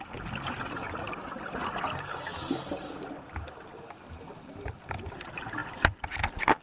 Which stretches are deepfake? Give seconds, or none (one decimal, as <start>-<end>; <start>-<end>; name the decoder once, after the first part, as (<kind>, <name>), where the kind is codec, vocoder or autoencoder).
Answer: 0.0-6.6 (vocoder, BigVGAN v2)